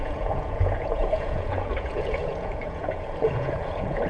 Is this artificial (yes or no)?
yes